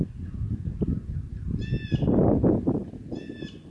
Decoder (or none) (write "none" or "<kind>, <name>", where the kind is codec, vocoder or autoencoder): none